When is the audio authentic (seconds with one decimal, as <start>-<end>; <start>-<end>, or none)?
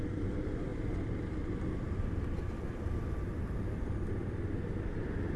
0.0-5.4